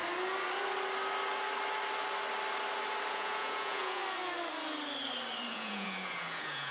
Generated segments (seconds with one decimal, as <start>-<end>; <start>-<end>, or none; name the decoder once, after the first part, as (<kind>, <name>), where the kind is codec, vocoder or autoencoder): 3.1-4.0 (vocoder, Vocos); 5.5-6.7